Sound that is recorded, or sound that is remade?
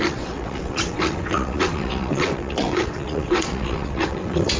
remade